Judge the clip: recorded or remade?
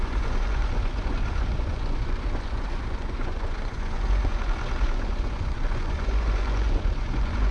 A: remade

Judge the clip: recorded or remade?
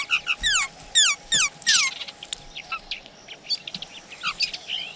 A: recorded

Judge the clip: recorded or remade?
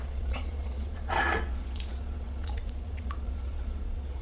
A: remade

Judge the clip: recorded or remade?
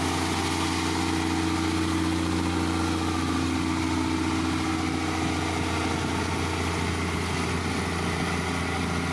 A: recorded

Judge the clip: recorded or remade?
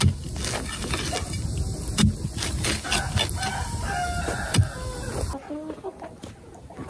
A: recorded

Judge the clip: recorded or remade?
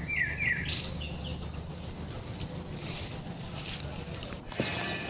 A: recorded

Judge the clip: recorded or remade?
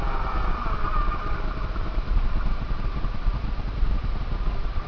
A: recorded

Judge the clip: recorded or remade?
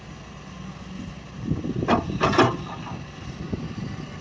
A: recorded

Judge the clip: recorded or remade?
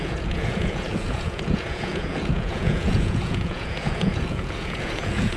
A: remade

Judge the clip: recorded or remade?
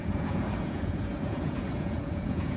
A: remade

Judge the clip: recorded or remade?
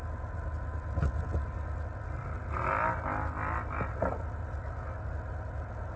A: recorded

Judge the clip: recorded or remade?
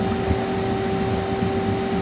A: recorded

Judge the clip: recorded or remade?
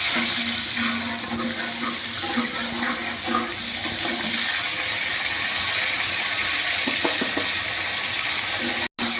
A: recorded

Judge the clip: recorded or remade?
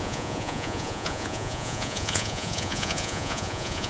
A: remade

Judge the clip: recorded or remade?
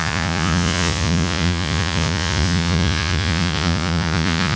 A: remade